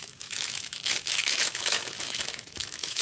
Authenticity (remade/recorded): remade